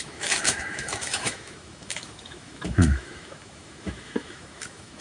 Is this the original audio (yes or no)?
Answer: no